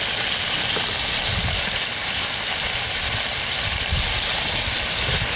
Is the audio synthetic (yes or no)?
no